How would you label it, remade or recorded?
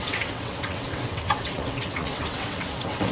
remade